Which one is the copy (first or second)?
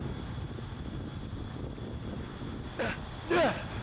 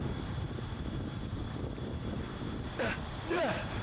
second